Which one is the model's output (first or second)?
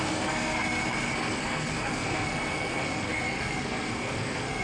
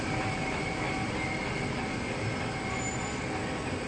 first